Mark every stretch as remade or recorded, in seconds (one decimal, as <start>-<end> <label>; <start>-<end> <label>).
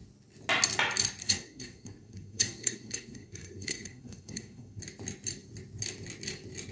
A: 0.0-1.2 recorded; 1.2-4.8 remade; 4.8-6.7 recorded